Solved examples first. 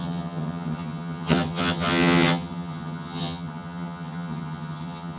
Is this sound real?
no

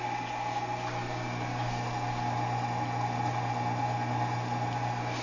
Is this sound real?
yes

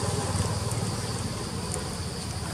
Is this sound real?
yes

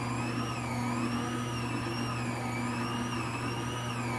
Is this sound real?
yes